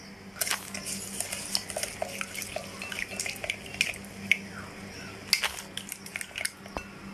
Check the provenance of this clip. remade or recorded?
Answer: recorded